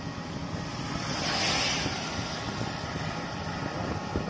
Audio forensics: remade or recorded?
recorded